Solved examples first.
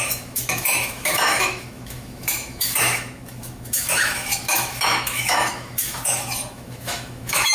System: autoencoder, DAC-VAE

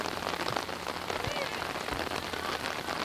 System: none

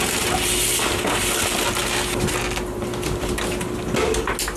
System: none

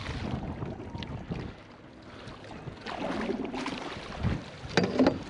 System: none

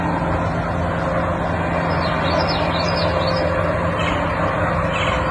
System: none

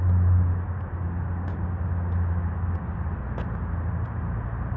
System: none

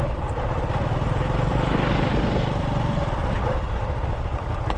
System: none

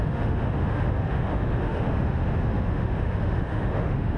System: autoencoder, DAC-VAE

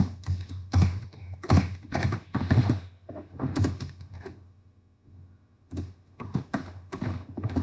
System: autoencoder, DAC-VAE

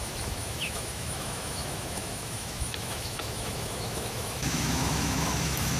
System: autoencoder, DAC-VAE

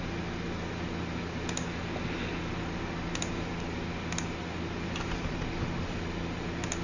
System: none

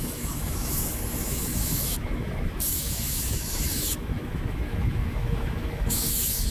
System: autoencoder, DAC-VAE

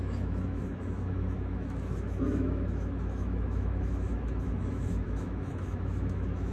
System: autoencoder, DAC-VAE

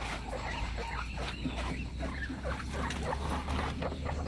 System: none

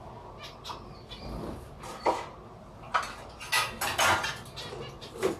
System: none